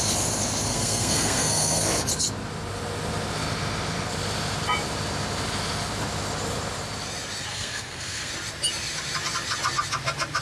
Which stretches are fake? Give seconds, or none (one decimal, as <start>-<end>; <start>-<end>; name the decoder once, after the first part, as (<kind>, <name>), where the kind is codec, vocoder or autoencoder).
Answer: 0.7-1.8 (codec, SNAC); 7.5-8.3